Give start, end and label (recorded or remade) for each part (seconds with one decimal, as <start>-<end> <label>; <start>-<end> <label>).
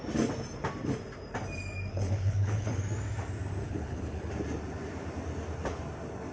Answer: 0.0-1.9 recorded; 1.9-2.8 remade; 2.8-3.6 recorded; 3.6-4.3 remade; 4.3-6.3 recorded